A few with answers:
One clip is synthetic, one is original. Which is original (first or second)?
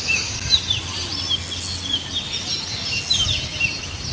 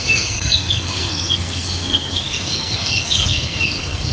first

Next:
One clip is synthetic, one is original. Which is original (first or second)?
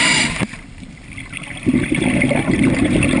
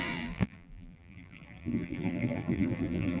first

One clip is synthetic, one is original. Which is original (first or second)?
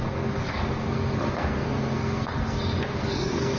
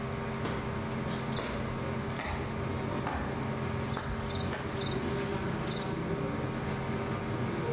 second